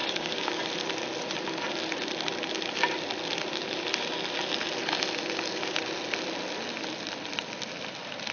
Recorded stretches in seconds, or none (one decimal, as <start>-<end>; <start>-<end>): 0.6-8.3